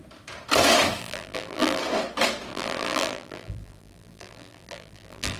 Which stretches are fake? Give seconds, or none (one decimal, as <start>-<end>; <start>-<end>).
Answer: 1.0-1.8; 2.5-5.4